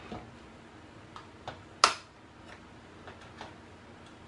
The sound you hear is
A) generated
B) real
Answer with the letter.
B